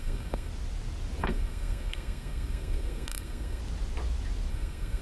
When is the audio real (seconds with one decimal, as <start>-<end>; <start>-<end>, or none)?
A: 0.5-1.2; 3.6-4.5

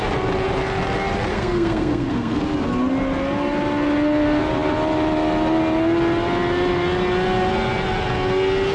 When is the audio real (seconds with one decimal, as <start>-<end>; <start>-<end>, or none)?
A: 0.0-1.3; 2.4-8.7

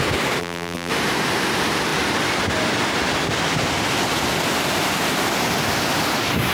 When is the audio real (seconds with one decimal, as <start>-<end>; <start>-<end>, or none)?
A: 0.0-0.4; 0.9-6.5

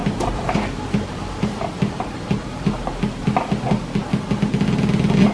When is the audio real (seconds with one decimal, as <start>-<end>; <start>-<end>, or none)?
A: 3.0-5.3